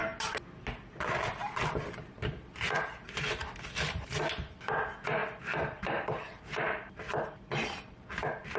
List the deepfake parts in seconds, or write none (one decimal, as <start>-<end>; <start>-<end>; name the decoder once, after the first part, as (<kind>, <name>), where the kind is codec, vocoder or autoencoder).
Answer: 3.4-4.2 (vocoder, BigVGAN v2); 5.2-8.2